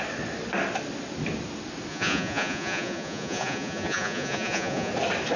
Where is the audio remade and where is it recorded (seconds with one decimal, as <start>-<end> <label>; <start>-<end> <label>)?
0.0-1.9 recorded; 1.9-4.9 remade; 4.9-5.4 recorded